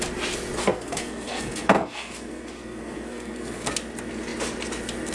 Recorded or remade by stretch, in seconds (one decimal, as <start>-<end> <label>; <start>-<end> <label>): 0.0-0.6 recorded; 0.6-3.7 remade; 3.7-5.1 recorded